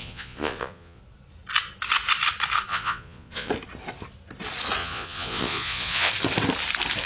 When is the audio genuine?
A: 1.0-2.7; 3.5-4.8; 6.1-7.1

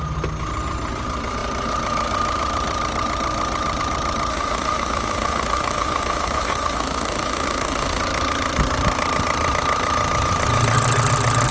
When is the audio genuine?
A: 0.0-4.3; 8.0-11.5

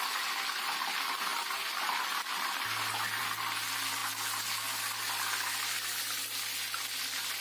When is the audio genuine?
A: 0.0-7.4

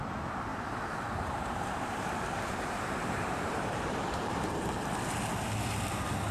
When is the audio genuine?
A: 0.0-0.5; 4.3-6.3